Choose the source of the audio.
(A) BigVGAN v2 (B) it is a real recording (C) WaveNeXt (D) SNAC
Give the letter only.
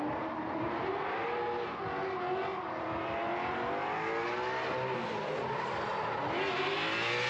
B